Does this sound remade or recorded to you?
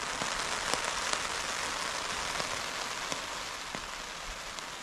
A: recorded